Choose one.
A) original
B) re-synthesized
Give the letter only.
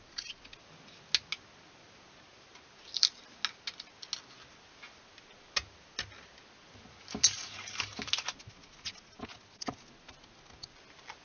A